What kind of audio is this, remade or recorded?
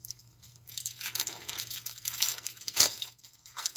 remade